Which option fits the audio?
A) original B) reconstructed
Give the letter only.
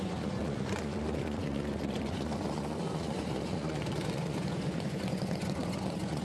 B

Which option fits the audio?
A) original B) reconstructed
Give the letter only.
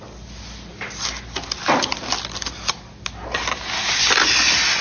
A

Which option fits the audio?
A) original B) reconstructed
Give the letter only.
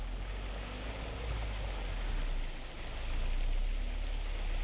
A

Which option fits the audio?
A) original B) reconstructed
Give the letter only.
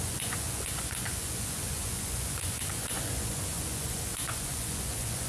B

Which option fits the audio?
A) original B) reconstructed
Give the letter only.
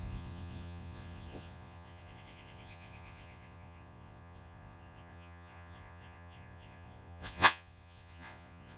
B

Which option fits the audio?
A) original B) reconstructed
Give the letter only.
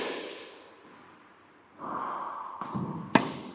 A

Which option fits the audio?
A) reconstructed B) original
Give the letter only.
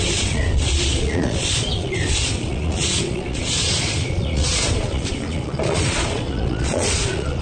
A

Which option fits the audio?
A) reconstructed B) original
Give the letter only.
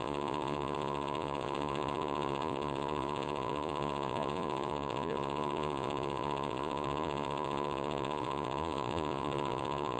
A